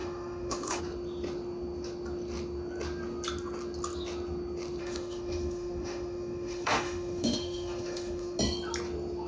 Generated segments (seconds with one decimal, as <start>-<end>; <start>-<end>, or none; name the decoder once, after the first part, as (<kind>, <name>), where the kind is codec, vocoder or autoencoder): 0.0-0.8 (autoencoder, DAC-VAE); 4.8-8.4